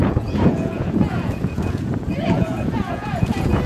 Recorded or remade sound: remade